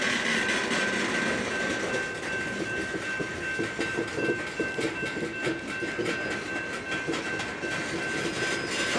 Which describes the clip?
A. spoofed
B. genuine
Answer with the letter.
B